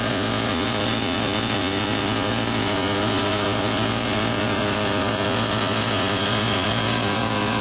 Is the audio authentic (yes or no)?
no